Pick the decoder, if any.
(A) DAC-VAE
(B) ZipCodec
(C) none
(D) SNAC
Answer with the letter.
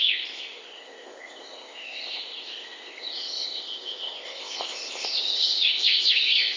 B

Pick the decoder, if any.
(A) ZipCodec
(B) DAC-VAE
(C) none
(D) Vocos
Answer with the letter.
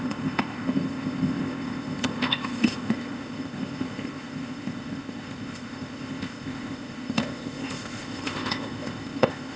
A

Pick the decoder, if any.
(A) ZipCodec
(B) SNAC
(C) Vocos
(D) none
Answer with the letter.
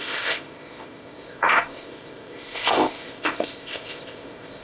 A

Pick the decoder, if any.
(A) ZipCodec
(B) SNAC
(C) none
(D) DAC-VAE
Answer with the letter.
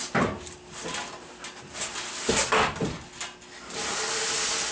C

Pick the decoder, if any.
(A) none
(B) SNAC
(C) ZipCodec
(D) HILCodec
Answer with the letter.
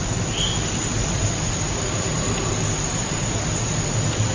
A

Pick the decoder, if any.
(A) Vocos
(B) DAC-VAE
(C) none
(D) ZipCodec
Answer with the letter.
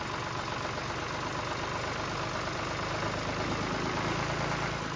C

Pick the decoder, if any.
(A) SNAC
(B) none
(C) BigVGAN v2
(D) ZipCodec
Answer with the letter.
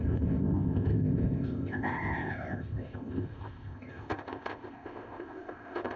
D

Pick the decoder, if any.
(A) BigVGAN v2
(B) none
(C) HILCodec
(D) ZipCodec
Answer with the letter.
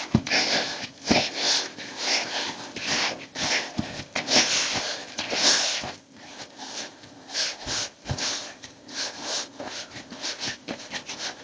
D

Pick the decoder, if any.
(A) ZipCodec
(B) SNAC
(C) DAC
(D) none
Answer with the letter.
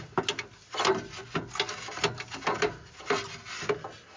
D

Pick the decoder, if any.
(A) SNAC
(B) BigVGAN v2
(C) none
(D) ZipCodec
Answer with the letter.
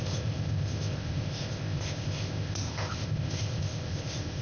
D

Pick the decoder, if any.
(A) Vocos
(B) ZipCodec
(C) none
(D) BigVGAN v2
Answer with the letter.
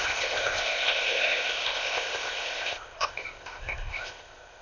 B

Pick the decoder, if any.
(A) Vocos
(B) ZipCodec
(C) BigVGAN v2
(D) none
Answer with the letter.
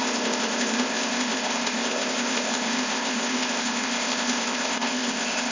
B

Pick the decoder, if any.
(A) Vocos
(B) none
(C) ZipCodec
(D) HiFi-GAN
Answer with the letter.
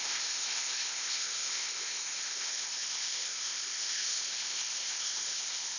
C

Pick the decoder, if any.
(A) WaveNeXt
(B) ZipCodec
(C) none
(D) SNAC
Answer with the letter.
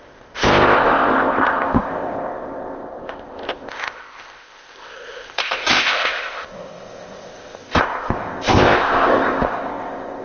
B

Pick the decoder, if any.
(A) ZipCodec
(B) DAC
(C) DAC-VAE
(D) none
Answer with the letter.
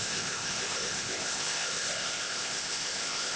A